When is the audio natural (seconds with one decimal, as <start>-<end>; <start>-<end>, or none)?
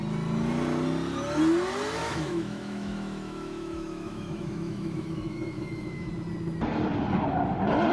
0.0-2.0; 6.1-7.9